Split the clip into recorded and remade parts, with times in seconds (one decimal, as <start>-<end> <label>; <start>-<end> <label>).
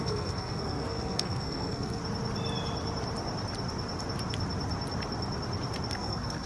0.0-2.0 remade; 2.0-5.9 recorded; 5.9-6.5 remade